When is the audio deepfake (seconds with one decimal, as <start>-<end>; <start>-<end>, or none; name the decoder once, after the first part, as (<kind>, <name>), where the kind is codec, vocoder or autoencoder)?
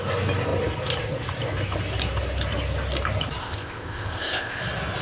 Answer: 3.4-4.6 (codec, ZipCodec)